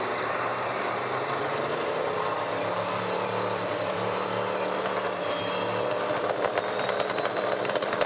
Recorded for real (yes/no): no